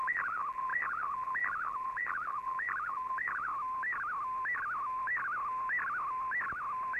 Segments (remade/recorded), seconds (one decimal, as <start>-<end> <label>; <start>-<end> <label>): 0.0-3.5 remade; 3.5-7.0 recorded